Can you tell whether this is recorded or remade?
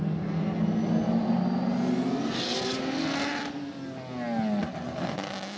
recorded